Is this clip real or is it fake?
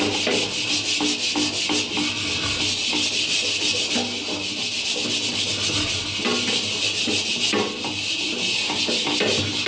real